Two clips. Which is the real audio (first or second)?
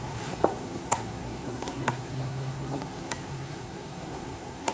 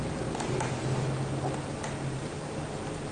second